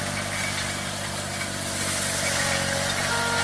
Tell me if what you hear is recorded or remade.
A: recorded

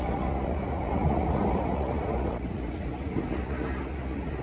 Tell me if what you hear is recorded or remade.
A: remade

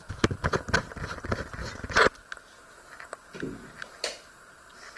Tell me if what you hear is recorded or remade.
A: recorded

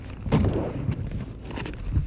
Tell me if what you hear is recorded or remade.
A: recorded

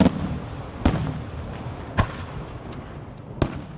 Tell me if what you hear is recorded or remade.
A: recorded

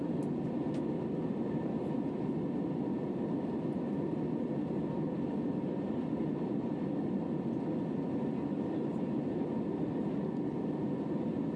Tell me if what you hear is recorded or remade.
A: recorded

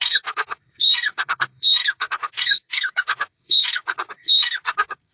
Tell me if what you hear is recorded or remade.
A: remade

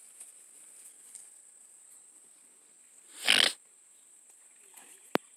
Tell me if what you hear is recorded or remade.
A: recorded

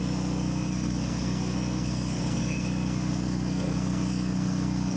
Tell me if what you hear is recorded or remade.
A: remade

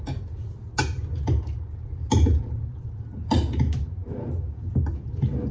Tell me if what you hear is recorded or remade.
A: recorded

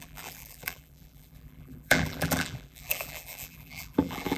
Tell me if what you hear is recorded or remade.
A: remade